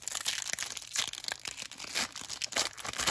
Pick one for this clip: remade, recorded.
recorded